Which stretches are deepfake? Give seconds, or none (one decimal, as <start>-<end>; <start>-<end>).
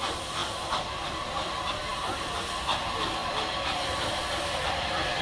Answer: none